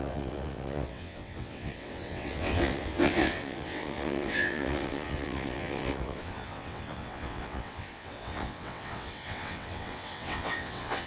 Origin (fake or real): fake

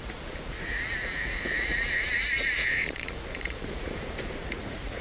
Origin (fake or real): fake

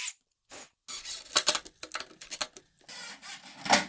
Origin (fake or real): real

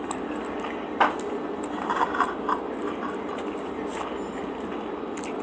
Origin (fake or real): real